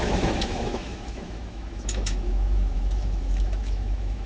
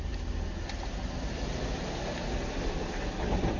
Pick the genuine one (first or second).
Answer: second